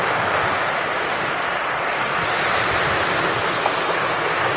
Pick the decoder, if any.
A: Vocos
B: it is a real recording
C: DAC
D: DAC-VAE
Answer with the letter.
B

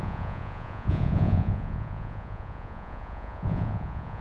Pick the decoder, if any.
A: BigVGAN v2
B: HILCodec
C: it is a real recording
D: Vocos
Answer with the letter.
D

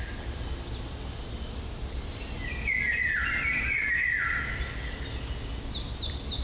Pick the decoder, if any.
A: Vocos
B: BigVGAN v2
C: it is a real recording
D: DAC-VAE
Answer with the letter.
C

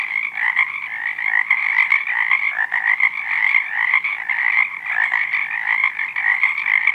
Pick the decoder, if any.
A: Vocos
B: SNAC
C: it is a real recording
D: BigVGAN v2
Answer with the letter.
C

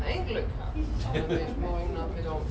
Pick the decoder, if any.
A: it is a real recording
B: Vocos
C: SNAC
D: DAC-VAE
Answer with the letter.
A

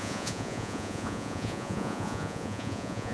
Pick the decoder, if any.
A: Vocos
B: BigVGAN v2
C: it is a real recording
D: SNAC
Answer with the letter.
A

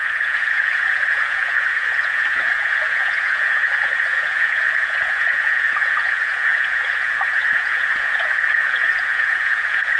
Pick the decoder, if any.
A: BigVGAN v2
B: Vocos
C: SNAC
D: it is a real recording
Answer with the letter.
B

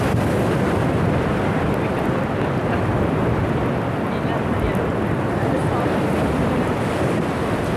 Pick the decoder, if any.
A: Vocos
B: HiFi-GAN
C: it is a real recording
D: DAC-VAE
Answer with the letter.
C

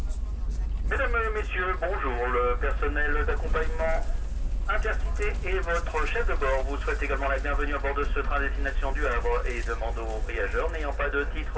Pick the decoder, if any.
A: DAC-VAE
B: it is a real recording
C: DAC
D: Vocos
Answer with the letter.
B